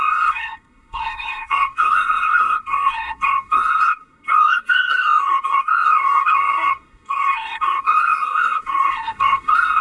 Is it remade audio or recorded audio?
remade